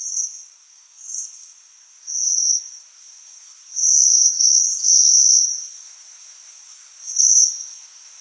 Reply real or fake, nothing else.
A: fake